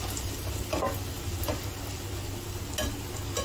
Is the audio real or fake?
real